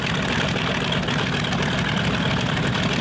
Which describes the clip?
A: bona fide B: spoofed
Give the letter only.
A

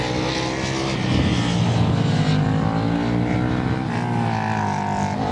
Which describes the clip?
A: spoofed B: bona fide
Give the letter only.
B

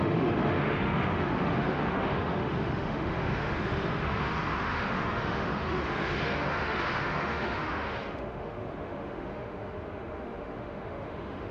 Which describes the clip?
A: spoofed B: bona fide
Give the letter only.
A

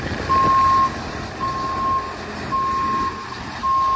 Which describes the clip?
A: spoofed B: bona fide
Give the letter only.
B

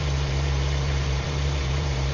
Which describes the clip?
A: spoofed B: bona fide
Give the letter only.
A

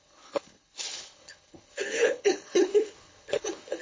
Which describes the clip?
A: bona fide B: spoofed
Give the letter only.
B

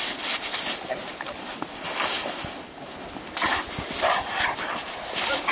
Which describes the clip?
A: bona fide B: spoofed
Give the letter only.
A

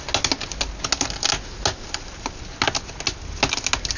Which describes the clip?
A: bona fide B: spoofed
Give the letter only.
A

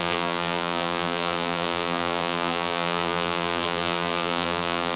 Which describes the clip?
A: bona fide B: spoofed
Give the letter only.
B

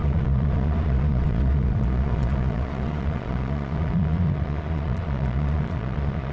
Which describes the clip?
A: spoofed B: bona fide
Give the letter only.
A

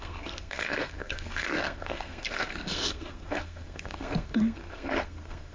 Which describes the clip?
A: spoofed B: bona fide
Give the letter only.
A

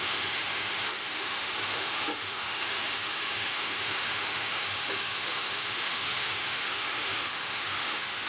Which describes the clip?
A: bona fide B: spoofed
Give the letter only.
B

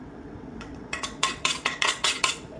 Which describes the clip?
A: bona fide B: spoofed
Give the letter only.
B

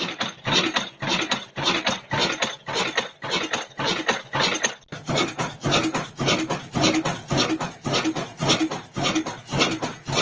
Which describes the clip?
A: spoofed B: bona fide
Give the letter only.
B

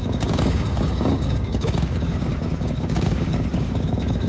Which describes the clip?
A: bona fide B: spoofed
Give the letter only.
B